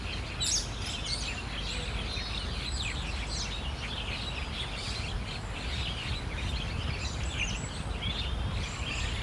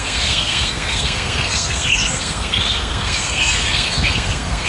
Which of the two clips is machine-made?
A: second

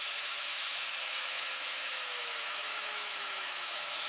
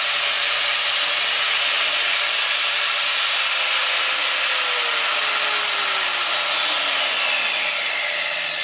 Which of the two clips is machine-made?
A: first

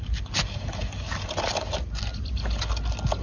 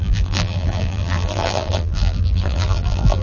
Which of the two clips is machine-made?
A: second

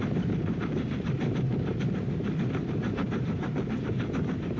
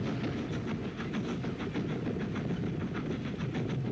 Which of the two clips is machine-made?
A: first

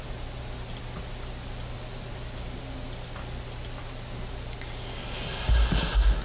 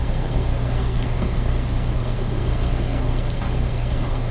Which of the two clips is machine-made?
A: second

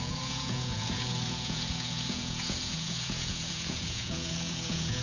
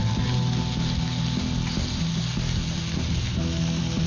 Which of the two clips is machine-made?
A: first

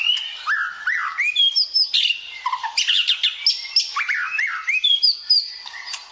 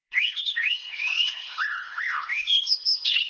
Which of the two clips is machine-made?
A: second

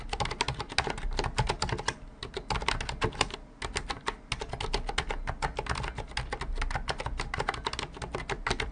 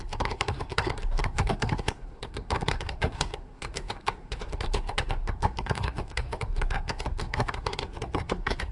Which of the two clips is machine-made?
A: second